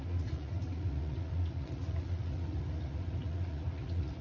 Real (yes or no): no